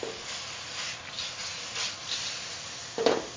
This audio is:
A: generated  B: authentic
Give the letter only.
B